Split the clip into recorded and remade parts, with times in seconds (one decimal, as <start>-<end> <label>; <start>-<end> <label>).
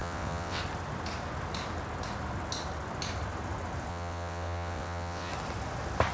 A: 0.0-0.6 remade; 0.6-3.9 recorded; 3.9-5.3 remade; 5.3-6.1 recorded